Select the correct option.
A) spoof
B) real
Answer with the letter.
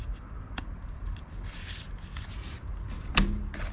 B